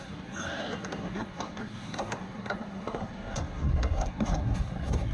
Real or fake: fake